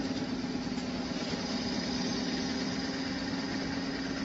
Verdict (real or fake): real